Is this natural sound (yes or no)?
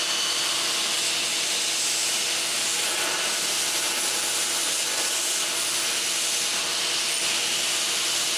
yes